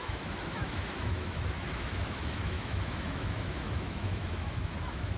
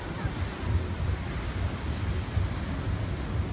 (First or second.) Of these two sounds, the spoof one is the first